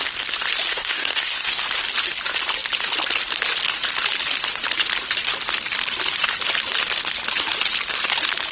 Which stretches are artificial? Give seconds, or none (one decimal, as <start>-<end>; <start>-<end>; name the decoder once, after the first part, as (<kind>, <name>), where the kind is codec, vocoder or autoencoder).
0.7-1.6 (codec, SNAC)